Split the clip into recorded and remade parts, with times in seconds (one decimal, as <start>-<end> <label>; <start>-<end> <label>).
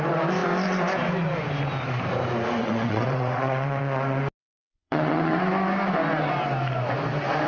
0.0-2.6 recorded; 2.6-3.8 remade; 3.8-4.4 recorded; 4.4-5.4 remade; 5.4-7.5 recorded